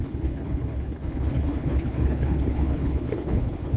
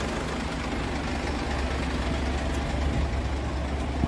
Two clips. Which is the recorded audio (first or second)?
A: second